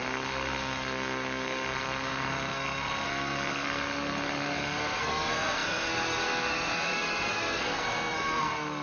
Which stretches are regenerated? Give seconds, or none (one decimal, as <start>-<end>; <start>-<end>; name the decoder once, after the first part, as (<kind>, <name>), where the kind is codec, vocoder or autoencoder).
0.0-8.8 (codec, SNAC)